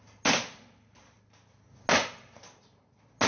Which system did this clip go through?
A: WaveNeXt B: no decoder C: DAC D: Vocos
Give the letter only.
B